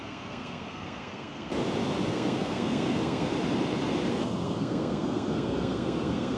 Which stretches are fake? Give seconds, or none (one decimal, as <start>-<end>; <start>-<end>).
0.0-1.5; 2.1-3.3; 4.1-6.4